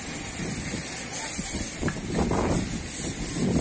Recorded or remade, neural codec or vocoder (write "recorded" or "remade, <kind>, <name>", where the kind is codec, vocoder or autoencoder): recorded